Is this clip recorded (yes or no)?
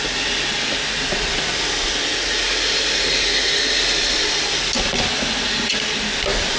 yes